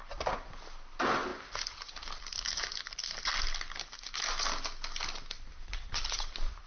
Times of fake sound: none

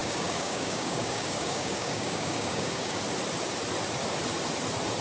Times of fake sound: 0.0-3.0 (codec, DAC)

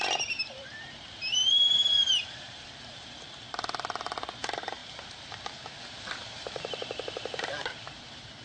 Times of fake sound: 0.0-1.2 (vocoder, BigVGAN v2); 1.7-8.4